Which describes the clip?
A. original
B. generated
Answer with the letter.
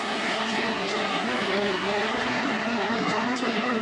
B